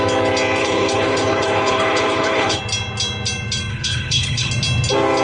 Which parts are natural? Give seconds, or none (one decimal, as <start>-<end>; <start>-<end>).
0.0-0.6; 2.6-3.7; 4.5-5.2